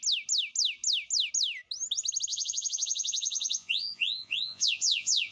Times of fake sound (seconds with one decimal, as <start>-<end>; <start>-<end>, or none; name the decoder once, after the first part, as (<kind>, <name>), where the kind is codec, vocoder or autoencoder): 2.3-5.3 (vocoder, Vocos)